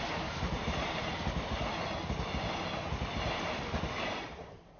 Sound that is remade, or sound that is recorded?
recorded